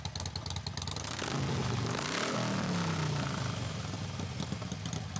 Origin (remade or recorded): recorded